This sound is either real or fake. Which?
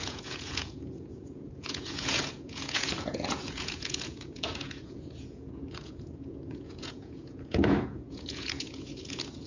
fake